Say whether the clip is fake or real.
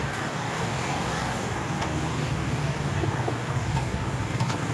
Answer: fake